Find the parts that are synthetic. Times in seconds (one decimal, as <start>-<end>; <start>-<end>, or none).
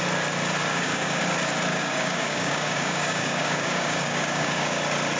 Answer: 0.7-1.2; 1.7-4.8